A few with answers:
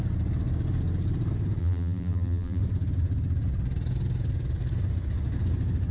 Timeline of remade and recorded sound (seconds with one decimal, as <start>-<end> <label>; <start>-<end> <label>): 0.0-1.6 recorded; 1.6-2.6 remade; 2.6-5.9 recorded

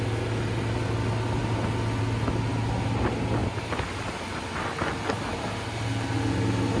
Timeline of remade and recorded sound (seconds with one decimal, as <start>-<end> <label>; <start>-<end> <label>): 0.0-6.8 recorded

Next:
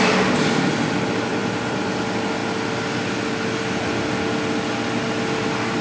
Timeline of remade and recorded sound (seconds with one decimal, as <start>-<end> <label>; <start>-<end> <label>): 0.0-1.3 recorded; 1.3-1.9 remade; 1.9-5.8 recorded

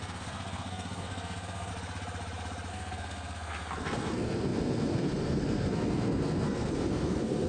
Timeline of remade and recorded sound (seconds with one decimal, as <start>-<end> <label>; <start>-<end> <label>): 0.0-1.7 remade; 1.7-2.7 recorded; 2.7-7.5 remade